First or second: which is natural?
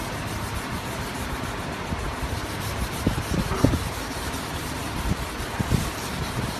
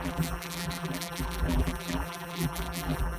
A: first